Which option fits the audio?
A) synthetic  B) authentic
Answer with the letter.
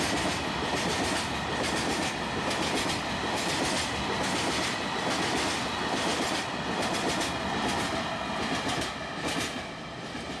B